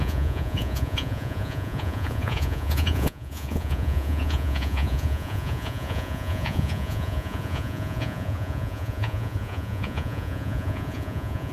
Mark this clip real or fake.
fake